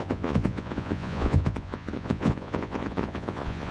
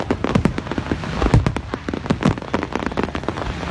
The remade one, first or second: first